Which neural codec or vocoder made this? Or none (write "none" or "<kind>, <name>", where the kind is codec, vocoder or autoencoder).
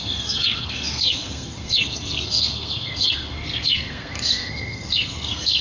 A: codec, SNAC